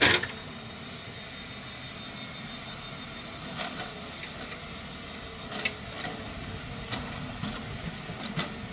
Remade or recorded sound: recorded